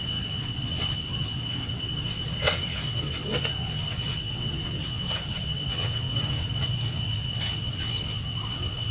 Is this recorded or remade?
remade